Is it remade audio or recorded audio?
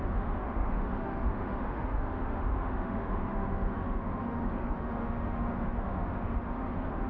remade